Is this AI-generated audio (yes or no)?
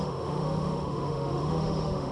yes